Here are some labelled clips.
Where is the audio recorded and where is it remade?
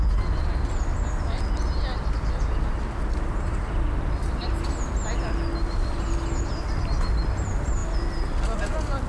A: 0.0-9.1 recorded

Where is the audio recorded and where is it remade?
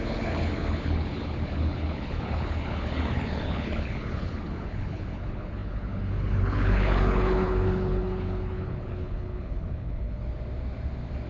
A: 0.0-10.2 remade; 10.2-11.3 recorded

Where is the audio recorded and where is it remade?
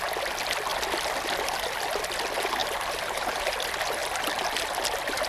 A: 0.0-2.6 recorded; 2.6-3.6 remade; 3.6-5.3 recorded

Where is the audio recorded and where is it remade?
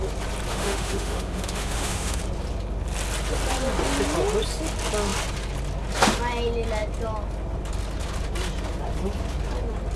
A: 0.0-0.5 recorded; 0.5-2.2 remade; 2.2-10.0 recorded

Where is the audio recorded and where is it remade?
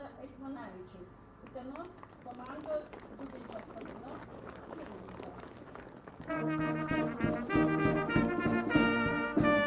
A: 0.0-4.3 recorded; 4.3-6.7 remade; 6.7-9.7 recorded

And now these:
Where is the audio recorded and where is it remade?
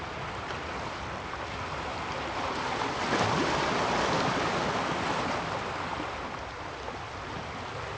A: 0.0-8.0 recorded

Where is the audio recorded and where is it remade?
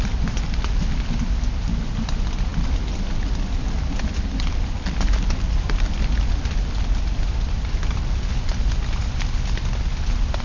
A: 0.0-10.4 recorded